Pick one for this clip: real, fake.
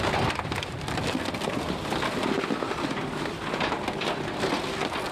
real